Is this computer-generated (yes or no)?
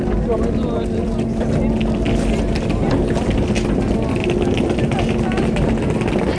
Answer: no